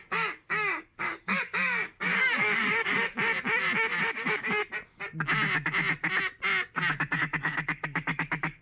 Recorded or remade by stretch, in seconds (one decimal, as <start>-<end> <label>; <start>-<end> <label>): 0.0-3.1 remade; 3.1-4.0 recorded; 4.0-4.6 remade; 4.6-7.2 recorded; 7.2-8.6 remade